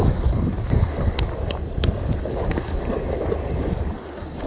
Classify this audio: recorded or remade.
remade